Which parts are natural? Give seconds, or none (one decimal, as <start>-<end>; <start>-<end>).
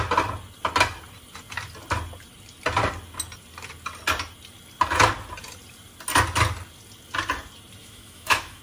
0.0-7.8